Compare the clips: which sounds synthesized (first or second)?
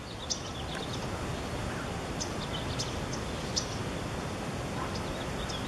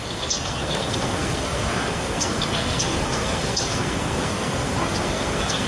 second